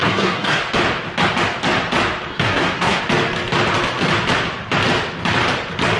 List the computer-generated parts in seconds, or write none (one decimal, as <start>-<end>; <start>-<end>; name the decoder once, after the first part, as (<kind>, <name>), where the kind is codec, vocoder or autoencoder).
0.0-0.6 (codec, SNAC); 2.3-3.0